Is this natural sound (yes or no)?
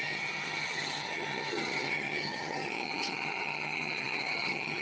no